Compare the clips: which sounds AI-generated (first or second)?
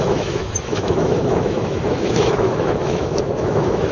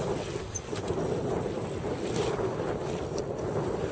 first